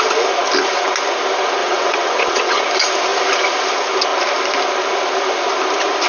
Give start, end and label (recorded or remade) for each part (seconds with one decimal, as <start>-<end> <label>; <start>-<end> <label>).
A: 0.0-1.6 recorded; 1.6-2.6 remade; 2.6-6.1 recorded